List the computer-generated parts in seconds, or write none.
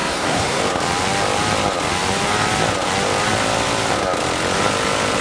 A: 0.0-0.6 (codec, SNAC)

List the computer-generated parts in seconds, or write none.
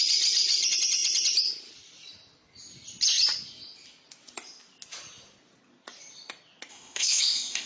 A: 6.7-7.7 (codec, ZipCodec)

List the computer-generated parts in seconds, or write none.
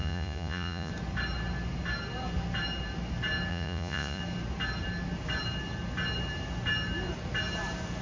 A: 0.0-0.9 (vocoder, Vocos); 3.5-4.2